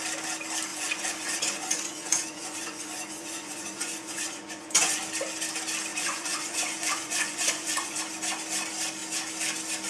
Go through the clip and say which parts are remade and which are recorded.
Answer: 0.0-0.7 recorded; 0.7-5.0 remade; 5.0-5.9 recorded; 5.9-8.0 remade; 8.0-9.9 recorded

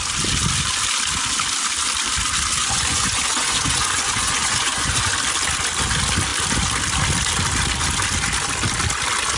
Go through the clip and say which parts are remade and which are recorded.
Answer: 0.0-2.6 recorded; 2.6-5.1 remade; 5.1-9.4 recorded

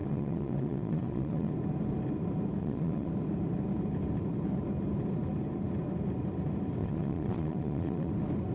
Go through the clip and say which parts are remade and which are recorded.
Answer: 0.0-1.5 remade; 1.5-2.6 recorded; 2.6-3.1 remade; 3.1-6.8 recorded; 6.8-8.1 remade; 8.1-8.5 recorded

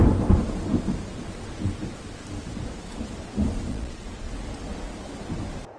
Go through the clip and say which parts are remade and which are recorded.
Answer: 0.0-3.7 recorded; 3.7-4.3 remade; 4.3-5.8 recorded

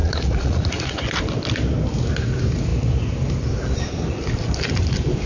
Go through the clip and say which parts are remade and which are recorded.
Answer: 0.0-1.0 remade; 1.0-5.3 recorded

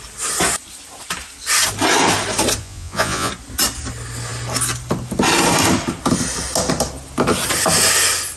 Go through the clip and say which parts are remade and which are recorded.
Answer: 0.0-2.6 recorded; 2.6-3.3 remade; 3.3-8.4 recorded

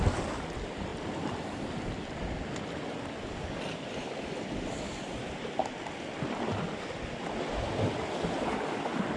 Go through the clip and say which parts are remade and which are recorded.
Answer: 0.0-9.2 recorded